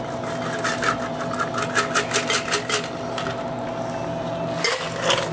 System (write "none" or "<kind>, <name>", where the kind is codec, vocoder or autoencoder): none